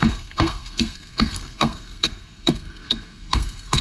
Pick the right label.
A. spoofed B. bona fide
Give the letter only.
A